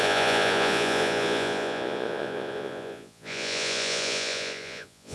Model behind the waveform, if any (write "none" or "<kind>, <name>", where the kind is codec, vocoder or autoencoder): vocoder, Vocos